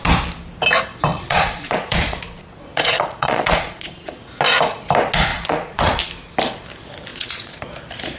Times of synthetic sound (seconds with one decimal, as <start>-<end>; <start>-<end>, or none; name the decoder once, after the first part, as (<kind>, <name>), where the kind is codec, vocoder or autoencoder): 1.1-4.2 (vocoder, Vocos); 5.3-6.0; 7.1-7.7